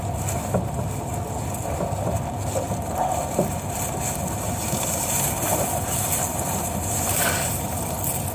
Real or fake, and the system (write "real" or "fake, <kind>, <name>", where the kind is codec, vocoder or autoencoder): real